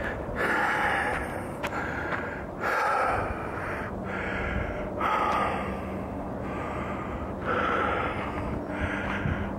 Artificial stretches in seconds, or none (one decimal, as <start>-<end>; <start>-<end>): none